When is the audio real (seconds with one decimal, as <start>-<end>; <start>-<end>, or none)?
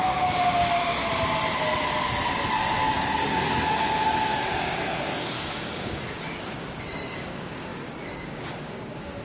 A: 1.0-2.5